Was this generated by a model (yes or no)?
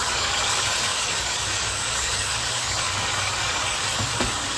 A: yes